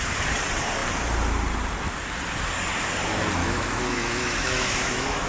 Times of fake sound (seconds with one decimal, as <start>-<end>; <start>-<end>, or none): 3.4-5.3

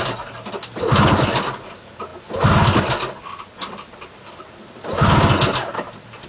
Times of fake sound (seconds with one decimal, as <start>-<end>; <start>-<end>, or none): none